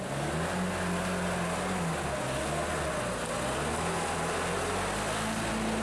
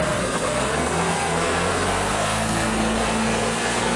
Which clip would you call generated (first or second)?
second